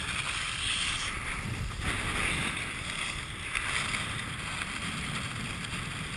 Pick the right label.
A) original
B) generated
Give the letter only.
B